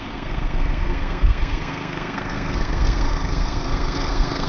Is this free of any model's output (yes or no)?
no